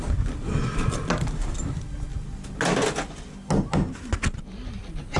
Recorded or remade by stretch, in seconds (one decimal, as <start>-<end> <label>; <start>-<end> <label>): 0.0-5.2 recorded